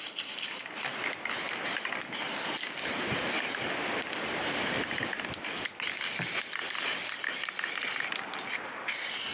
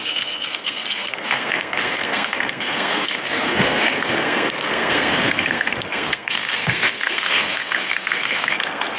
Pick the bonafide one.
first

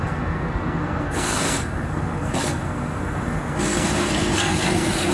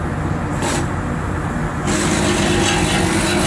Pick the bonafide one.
second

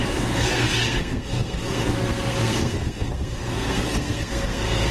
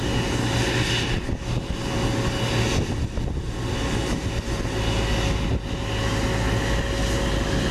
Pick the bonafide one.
second